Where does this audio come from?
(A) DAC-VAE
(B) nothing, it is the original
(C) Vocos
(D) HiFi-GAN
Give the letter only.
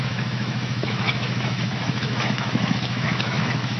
A